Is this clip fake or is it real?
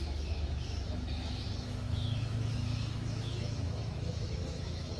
fake